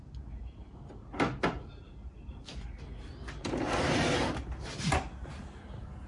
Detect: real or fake real